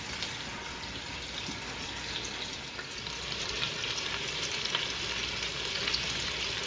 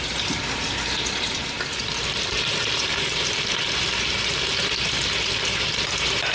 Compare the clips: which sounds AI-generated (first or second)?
second